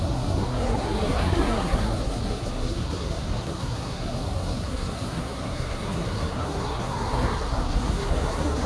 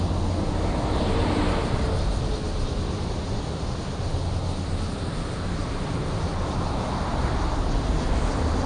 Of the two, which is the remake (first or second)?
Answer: first